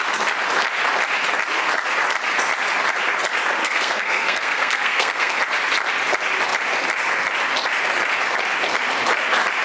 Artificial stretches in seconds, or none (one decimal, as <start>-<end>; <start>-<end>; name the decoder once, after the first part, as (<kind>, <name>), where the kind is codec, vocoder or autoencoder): 3.6-5.4 (codec, SNAC)